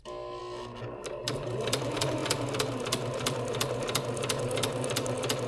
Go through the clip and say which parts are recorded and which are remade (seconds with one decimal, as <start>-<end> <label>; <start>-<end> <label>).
0.0-5.5 recorded